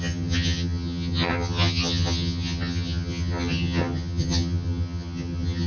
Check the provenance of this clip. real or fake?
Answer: fake